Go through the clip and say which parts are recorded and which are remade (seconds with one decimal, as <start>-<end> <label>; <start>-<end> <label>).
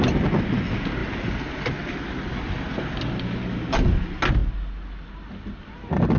0.0-6.2 recorded